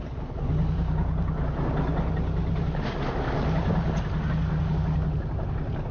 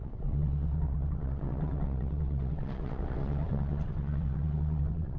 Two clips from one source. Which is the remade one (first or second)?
second